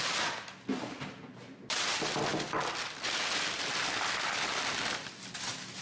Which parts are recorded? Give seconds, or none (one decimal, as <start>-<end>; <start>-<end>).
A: 0.0-5.8

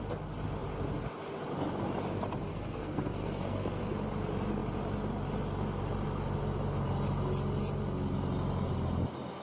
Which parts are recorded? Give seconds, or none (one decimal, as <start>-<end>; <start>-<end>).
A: 0.0-2.5; 3.8-9.4

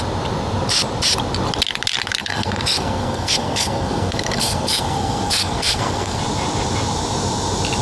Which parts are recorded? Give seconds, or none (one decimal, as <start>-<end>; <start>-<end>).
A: 0.0-2.2; 6.2-7.8